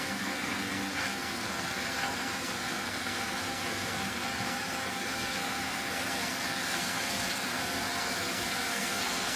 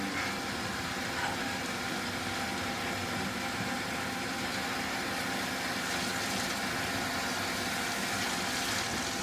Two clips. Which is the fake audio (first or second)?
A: first